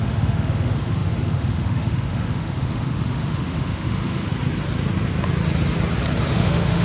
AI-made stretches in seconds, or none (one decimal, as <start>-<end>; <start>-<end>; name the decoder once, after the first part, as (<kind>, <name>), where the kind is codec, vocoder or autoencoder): 0.0-4.3 (autoencoder, DAC-VAE); 6.3-6.8